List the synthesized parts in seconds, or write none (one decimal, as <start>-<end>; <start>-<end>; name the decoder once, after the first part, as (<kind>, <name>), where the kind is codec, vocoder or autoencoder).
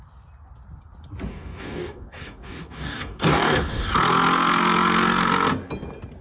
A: 1.3-3.9 (codec, DAC)